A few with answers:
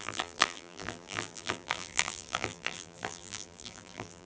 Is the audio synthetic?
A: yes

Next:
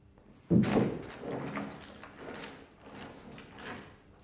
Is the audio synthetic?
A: no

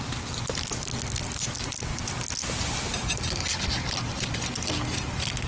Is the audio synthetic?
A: no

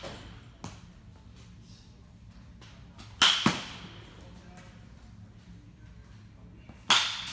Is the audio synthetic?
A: no